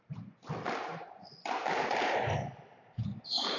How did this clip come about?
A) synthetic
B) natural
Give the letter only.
B